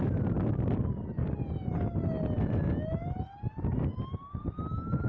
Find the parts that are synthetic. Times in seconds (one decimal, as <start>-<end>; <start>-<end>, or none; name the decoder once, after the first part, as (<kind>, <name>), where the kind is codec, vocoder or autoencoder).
none